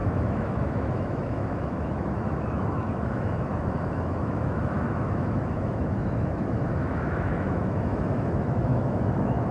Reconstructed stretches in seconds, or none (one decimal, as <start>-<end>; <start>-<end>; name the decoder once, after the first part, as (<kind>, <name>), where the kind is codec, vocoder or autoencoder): 0.0-9.5 (autoencoder, DAC-VAE)